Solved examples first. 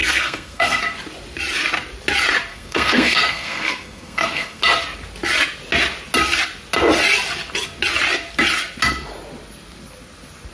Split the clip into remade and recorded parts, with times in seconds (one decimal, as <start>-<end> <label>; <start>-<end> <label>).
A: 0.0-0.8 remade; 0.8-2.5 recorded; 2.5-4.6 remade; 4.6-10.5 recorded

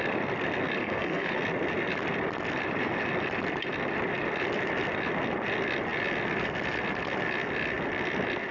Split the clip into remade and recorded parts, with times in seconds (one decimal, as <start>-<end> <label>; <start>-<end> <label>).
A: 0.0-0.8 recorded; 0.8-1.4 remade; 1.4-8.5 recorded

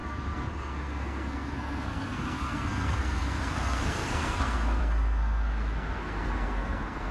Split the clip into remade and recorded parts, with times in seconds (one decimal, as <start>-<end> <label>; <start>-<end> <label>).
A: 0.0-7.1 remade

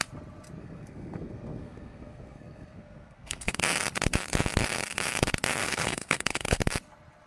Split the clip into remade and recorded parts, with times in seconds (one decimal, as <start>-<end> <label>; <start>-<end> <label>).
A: 0.0-0.6 recorded; 0.6-3.6 remade; 3.6-5.6 recorded; 5.6-6.6 remade; 6.6-7.3 recorded

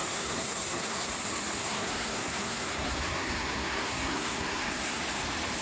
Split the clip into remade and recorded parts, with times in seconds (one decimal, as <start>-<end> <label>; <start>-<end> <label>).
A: 0.0-1.1 remade; 1.1-1.6 recorded; 1.6-5.0 remade; 5.0-5.6 recorded

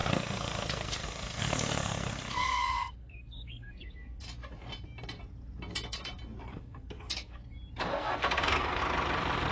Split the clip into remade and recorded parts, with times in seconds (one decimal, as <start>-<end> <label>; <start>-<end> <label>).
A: 0.0-4.2 remade; 4.2-6.5 recorded; 6.5-7.5 remade; 7.5-7.9 recorded; 7.9-8.8 remade; 8.8-9.5 recorded

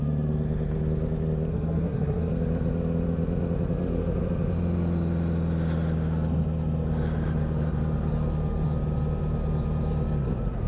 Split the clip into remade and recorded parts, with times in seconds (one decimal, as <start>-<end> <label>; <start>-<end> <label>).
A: 0.0-1.5 recorded; 1.5-2.3 remade; 2.3-10.7 recorded

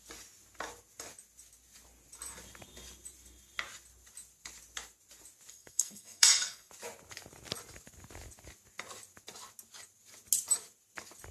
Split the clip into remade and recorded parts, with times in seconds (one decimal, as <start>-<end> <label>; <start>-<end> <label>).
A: 0.0-5.5 recorded; 5.5-6.7 remade; 6.7-11.3 recorded